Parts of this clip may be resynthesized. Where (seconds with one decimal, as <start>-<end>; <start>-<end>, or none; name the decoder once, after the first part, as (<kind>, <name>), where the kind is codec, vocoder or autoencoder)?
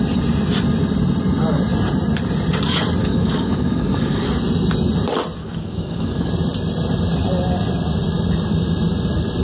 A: 3.0-4.2 (codec, DAC); 5.4-6.3